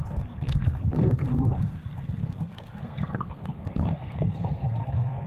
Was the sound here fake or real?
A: fake